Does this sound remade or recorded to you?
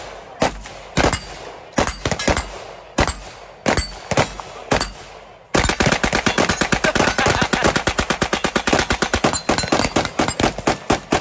recorded